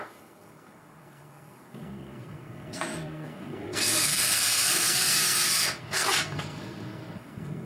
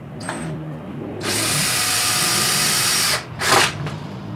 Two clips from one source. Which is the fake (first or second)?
first